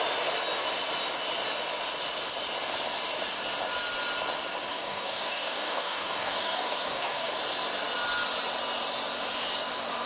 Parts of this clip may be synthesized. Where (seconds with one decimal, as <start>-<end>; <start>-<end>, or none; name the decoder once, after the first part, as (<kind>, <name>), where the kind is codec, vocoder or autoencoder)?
4.7-7.3 (codec, DAC)